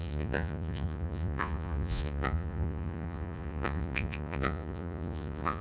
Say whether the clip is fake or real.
fake